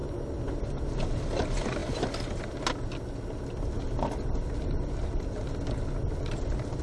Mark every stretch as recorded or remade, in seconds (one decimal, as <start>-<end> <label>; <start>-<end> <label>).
0.0-6.8 recorded